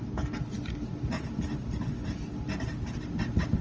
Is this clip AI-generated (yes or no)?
no